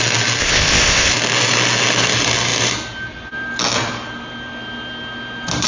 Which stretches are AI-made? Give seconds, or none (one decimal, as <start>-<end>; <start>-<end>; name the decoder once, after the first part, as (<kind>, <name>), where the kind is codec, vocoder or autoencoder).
0.4-1.1 (codec, ZipCodec)